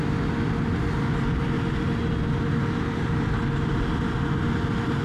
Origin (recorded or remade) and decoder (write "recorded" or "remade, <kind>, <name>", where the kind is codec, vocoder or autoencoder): recorded